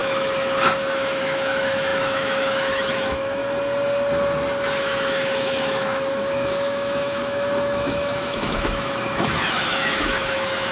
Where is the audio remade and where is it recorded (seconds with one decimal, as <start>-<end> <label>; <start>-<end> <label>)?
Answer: 0.0-3.4 remade; 3.4-4.8 recorded; 4.8-10.7 remade